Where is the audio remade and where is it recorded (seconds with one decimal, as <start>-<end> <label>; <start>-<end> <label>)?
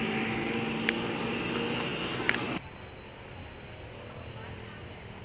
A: 0.0-5.2 recorded